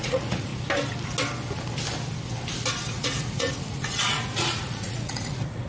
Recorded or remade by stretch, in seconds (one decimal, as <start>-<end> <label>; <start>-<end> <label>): 0.0-0.5 remade; 0.5-2.9 recorded; 2.9-5.7 remade